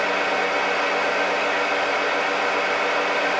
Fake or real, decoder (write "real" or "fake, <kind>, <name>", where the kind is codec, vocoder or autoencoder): real